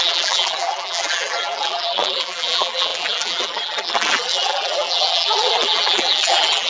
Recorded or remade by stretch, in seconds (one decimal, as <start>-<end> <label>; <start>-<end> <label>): 0.0-6.7 remade